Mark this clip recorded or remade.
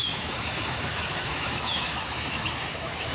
remade